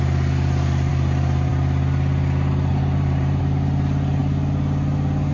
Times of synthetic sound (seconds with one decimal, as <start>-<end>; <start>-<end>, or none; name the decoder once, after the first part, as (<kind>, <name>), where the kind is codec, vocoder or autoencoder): 2.7-3.4 (vocoder, BigVGAN v2)